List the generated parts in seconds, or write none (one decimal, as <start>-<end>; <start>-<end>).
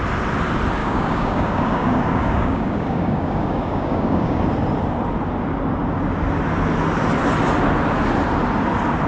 0.8-4.4